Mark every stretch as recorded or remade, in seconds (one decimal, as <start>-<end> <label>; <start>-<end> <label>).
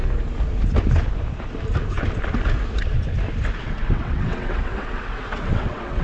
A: 0.0-3.6 recorded; 3.6-6.0 remade